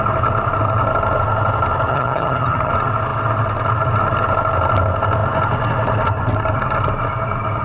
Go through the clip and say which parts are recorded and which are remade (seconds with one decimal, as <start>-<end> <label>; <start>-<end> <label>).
0.0-1.9 recorded; 1.9-2.7 remade; 2.7-7.6 recorded